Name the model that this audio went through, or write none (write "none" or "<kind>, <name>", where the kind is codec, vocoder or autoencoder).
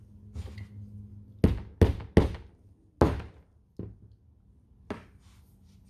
none